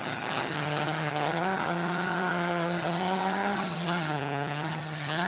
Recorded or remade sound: remade